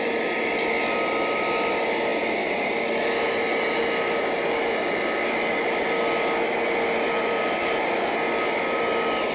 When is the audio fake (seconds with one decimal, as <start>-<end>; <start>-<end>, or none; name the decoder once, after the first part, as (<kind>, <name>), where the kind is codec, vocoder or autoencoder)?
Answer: none